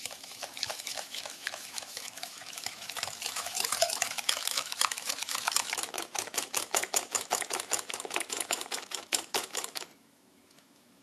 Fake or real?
fake